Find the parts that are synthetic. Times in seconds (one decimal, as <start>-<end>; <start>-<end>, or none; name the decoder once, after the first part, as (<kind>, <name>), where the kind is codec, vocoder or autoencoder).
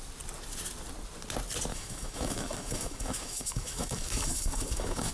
1.7-5.1 (autoencoder, DAC-VAE)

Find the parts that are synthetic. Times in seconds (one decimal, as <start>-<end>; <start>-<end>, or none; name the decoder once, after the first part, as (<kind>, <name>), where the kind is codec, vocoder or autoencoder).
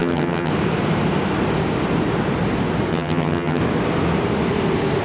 0.0-0.5 (vocoder, HiFi-GAN); 2.9-3.6